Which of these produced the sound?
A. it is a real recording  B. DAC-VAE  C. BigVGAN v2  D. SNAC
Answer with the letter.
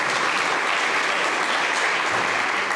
A